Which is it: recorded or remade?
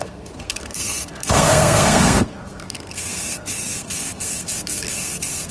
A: remade